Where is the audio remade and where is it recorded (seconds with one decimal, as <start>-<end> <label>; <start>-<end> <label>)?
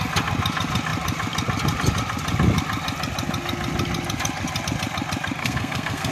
0.0-5.4 recorded; 5.4-6.1 remade